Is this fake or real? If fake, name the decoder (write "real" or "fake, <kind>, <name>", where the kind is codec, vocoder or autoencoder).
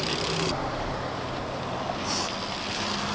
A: real